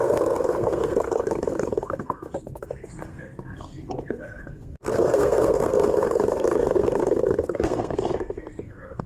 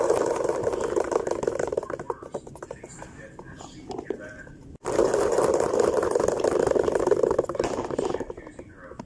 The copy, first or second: first